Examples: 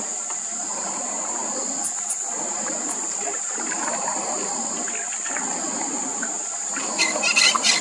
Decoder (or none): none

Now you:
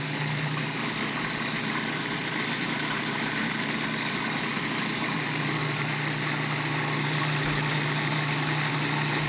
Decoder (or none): none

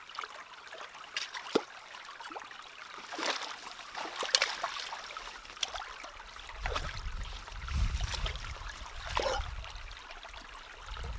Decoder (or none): none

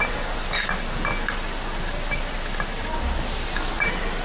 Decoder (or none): vocoder, BigVGAN v2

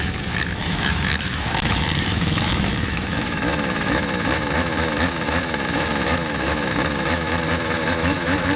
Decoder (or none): autoencoder, DAC-VAE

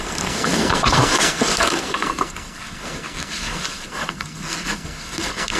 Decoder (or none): codec, SNAC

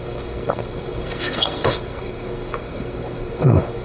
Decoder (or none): codec, SNAC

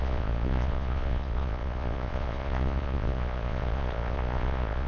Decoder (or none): vocoder, Vocos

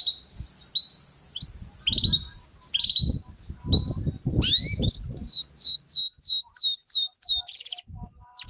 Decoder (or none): none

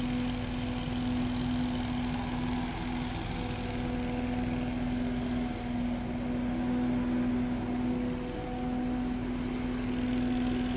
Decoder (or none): none